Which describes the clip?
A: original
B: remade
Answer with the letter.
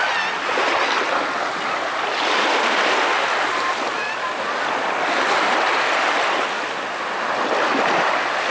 A